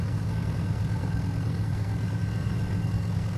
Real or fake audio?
fake